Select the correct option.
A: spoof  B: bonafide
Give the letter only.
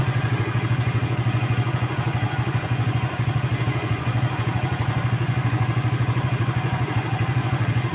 A